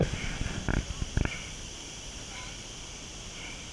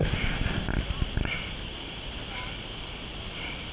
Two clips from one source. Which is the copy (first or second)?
first